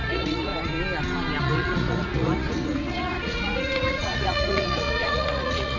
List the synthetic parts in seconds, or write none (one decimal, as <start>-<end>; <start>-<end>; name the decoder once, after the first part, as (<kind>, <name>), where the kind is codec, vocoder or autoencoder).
0.0-0.5 (vocoder, Vocos); 1.4-5.8